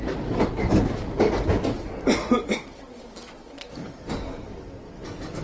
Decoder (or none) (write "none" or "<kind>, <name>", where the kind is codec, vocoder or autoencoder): none